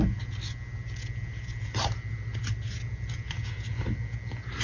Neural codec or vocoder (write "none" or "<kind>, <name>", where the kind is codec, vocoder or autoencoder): none